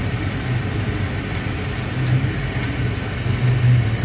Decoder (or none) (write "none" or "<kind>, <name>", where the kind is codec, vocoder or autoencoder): none